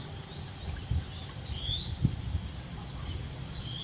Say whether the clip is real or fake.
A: real